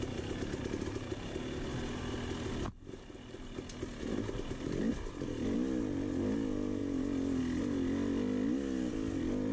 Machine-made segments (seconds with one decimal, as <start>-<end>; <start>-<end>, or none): none